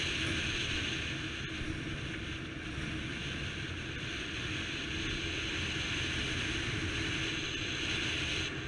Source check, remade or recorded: recorded